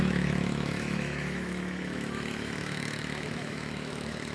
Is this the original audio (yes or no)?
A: no